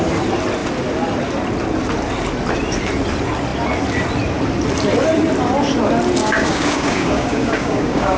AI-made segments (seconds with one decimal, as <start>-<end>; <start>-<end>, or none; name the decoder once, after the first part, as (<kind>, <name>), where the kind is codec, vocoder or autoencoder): 6.2-8.2 (codec, DAC)

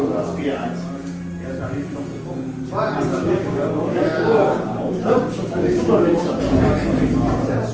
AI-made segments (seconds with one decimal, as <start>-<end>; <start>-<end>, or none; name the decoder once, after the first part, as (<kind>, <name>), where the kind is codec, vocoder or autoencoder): 3.1-6.4 (codec, DAC)